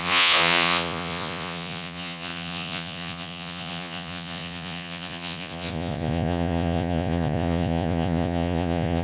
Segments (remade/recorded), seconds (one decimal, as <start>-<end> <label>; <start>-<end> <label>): 0.0-9.0 remade

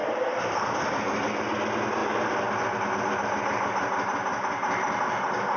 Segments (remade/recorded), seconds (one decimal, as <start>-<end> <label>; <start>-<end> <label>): 0.0-1.0 remade; 1.0-5.6 recorded

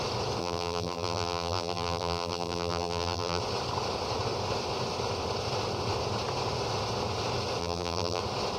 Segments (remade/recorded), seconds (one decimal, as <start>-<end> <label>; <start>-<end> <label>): 0.0-0.4 recorded; 0.4-3.4 remade; 3.4-7.6 recorded; 7.6-8.2 remade; 8.2-8.6 recorded